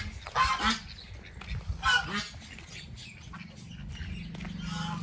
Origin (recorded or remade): recorded